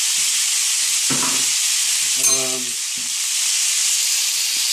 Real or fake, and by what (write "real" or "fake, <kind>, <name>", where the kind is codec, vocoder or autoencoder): real